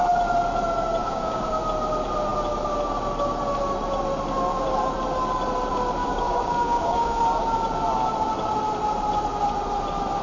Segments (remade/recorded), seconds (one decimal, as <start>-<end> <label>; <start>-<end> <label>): 0.0-1.0 recorded; 1.0-1.6 remade; 1.6-6.0 recorded; 6.0-7.2 remade; 7.2-10.2 recorded